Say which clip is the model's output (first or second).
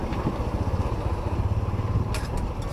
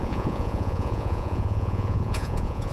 second